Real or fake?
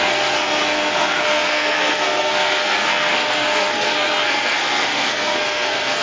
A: fake